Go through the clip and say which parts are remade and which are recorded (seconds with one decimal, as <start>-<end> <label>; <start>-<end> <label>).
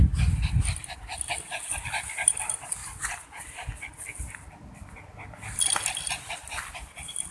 0.0-7.3 recorded